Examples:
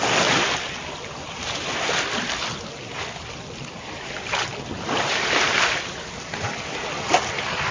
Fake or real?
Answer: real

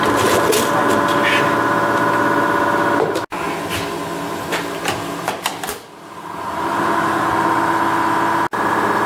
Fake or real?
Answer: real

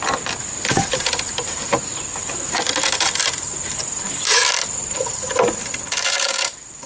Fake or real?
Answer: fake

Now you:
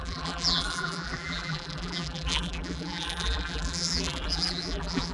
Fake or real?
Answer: fake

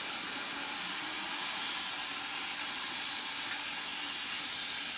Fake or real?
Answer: real